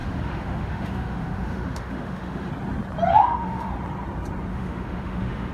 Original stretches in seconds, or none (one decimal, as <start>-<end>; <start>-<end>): 2.5-3.1; 3.7-4.5